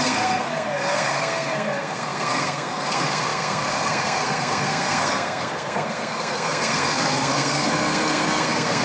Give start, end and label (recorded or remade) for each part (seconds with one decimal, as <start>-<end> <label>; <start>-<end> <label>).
0.0-8.8 remade